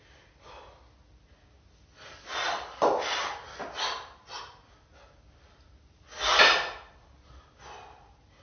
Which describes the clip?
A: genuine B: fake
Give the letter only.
A